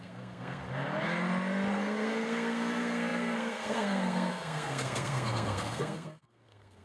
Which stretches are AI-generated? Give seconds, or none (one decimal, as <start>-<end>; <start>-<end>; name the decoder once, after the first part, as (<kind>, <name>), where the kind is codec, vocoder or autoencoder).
0.0-0.6 (codec, SNAC); 1.7-6.8